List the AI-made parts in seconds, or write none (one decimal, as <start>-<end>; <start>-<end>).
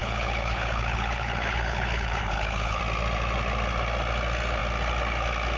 0.0-2.8